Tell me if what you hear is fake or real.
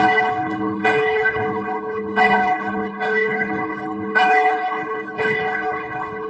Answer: fake